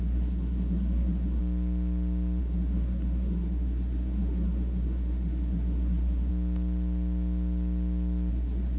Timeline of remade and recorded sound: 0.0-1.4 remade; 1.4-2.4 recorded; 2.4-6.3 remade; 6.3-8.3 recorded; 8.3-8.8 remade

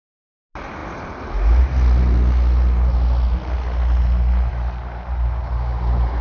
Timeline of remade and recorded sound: 0.0-6.2 recorded

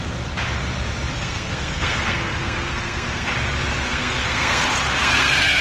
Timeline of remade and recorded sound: 0.0-1.2 recorded; 1.2-3.3 remade; 3.3-3.9 recorded; 3.9-4.6 remade; 4.6-5.0 recorded; 5.0-5.6 remade

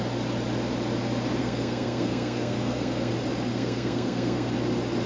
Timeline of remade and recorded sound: 0.0-1.4 recorded; 1.4-3.1 remade; 3.1-3.5 recorded; 3.5-4.5 remade; 4.5-5.1 recorded

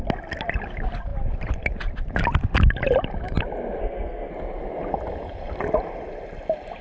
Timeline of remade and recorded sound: 0.0-3.8 recorded; 3.8-4.3 remade; 4.3-6.8 recorded

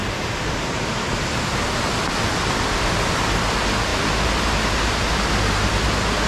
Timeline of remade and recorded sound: 0.0-6.3 recorded